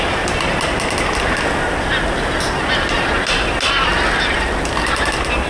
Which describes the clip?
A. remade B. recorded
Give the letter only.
B